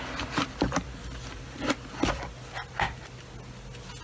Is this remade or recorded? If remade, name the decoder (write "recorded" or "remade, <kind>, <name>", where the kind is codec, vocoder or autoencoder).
recorded